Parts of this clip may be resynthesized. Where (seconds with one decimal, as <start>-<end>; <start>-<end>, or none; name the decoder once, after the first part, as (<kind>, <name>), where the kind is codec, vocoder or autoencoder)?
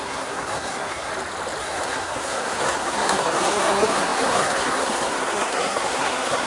0.0-1.1 (codec, SNAC); 1.6-6.5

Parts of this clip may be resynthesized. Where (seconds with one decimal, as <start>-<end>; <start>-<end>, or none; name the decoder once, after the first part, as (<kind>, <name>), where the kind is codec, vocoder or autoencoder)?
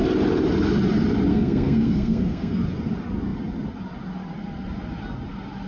1.3-2.6 (codec, SNAC)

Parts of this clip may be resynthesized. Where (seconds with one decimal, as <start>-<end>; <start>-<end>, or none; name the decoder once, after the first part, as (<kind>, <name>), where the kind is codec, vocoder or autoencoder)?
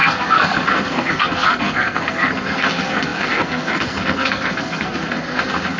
0.0-5.8 (codec, SNAC)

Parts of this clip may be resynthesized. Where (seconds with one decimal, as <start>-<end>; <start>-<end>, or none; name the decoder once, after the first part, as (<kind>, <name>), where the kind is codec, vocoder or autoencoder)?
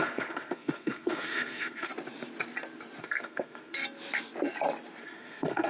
0.0-1.9 (codec, SNAC); 3.0-3.8; 5.0-5.7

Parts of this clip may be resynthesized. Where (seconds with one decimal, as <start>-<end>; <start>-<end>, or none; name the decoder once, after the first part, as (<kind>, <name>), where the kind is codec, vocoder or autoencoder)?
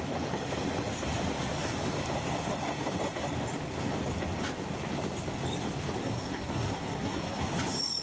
6.0-7.4 (codec, SNAC)